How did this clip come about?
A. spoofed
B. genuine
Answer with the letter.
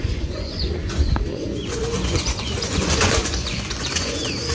A